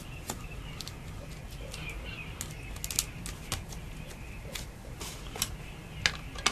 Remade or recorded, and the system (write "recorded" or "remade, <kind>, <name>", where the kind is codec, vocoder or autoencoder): recorded